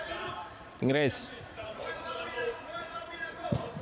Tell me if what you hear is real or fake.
fake